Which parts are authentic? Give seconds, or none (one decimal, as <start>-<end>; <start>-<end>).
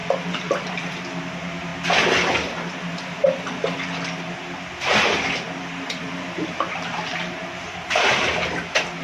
0.7-7.1; 8.5-9.0